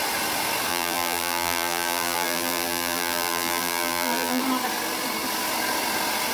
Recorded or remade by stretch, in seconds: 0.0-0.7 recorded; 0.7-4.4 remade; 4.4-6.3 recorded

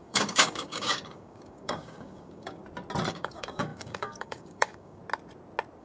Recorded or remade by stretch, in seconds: 0.0-2.6 remade; 2.6-3.1 recorded; 3.1-5.0 remade; 5.0-5.8 recorded